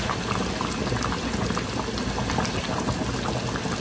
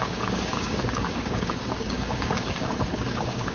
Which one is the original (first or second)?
first